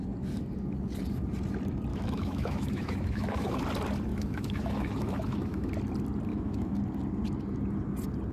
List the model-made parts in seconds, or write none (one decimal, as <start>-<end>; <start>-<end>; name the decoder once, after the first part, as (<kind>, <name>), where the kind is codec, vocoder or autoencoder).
1.9-3.6 (autoencoder, DAC-VAE); 4.1-5.7; 6.3-6.8